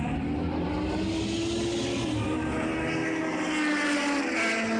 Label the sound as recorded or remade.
recorded